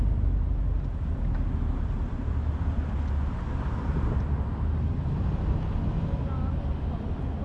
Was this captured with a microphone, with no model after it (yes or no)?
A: yes